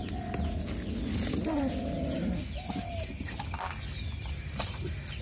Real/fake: real